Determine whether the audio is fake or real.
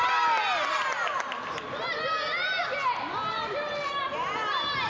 real